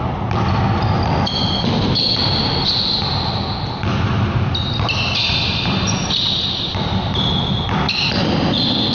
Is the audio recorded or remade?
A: recorded